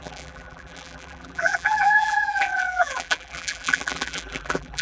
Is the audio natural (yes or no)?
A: no